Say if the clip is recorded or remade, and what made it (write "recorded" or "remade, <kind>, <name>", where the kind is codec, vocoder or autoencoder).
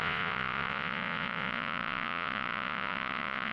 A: remade, vocoder, Vocos